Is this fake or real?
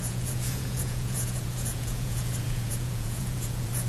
fake